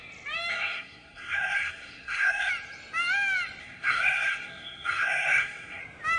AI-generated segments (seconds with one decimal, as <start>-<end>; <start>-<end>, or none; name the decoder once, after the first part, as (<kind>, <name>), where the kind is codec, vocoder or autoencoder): 0.5-2.5 (codec, SNAC); 3.6-5.8